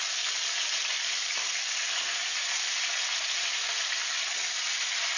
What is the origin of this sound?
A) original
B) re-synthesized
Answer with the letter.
A